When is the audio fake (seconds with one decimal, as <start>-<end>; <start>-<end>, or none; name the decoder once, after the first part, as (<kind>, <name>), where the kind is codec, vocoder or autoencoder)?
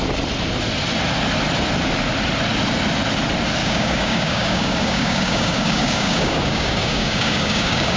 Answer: 3.6-8.0 (codec, DAC)